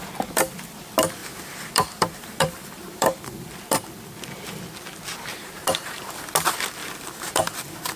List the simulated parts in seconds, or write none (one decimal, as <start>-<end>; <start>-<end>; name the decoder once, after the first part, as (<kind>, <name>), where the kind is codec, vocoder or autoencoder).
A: 1.2-3.5 (vocoder, BigVGAN v2); 5.3-6.2; 6.8-8.0